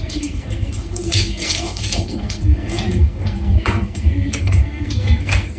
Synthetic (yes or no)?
yes